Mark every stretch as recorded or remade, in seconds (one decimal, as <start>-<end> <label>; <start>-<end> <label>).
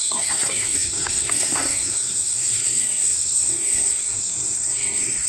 0.0-5.3 remade